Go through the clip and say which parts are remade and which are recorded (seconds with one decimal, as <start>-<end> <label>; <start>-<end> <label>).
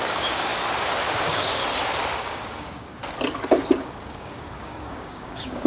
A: 0.0-0.5 remade; 0.5-1.2 recorded; 1.2-1.6 remade; 1.6-2.2 recorded; 2.2-3.0 remade; 3.0-3.8 recorded; 3.8-5.7 remade